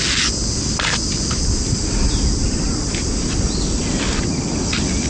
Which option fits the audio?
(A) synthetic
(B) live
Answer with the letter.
B